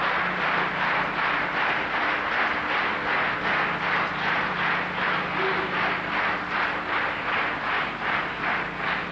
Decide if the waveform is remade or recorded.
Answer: recorded